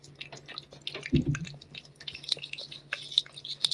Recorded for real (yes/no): yes